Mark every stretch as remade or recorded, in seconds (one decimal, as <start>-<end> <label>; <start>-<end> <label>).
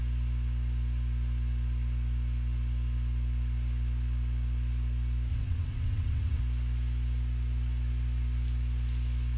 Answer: 0.0-5.3 recorded; 5.3-6.4 remade; 6.4-9.4 recorded